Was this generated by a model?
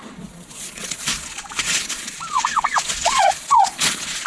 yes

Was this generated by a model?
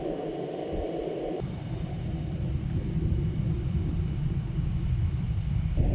no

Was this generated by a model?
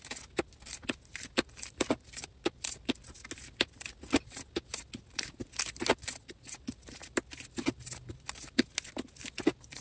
no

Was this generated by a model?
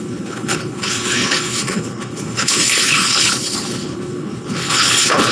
yes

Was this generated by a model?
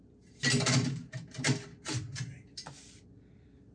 no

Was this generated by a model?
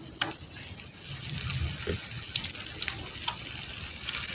no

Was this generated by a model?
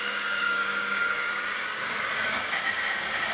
yes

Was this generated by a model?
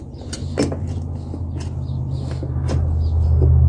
no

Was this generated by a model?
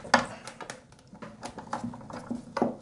no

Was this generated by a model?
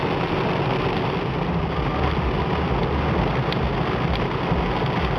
no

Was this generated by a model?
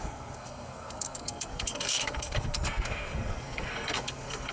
yes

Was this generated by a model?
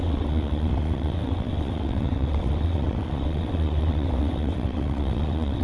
yes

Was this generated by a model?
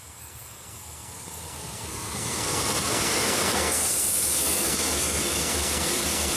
yes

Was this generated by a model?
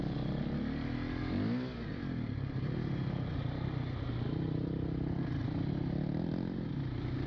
no